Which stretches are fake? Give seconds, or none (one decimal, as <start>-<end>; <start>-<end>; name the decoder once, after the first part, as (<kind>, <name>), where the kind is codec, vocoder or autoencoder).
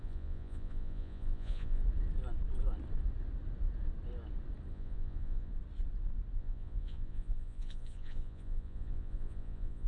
0.0-1.8 (vocoder, Vocos); 4.7-5.5; 6.4-9.9